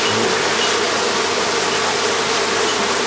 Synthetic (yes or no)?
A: no